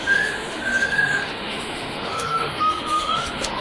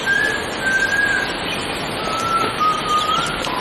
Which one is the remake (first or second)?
first